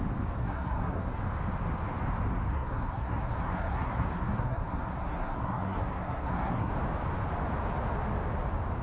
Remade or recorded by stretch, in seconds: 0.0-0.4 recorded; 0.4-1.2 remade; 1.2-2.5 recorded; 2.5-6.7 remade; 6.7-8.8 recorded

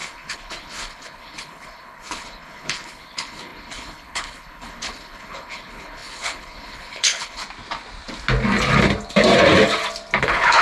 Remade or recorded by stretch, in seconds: 0.0-7.4 remade; 7.4-10.2 recorded; 10.2-10.6 remade

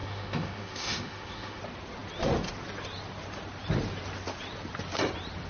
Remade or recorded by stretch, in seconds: 0.0-1.6 remade; 1.6-5.5 recorded

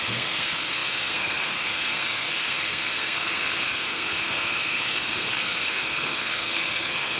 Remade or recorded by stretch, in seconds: 0.0-7.2 remade

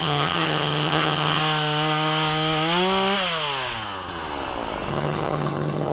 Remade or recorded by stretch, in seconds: 0.0-1.4 remade; 1.4-4.9 recorded; 4.9-5.9 remade

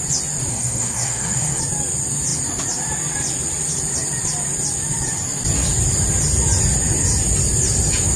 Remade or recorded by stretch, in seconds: 0.0-0.5 recorded; 0.5-1.6 remade; 1.6-8.2 recorded

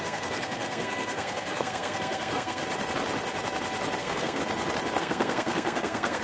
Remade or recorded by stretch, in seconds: 0.0-2.6 remade; 2.6-4.0 recorded; 4.0-4.4 remade; 4.4-5.0 recorded; 5.0-6.2 remade

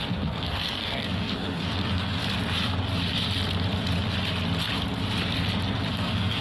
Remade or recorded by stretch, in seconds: 0.0-2.2 remade; 2.2-5.9 recorded; 5.9-6.4 remade